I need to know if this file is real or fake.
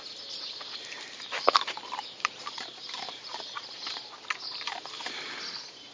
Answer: fake